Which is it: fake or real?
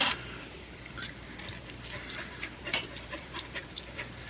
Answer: fake